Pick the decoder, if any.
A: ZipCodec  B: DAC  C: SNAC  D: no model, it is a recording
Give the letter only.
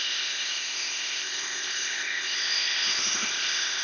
A